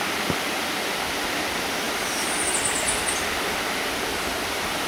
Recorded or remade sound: recorded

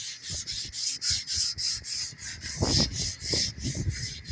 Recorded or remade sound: recorded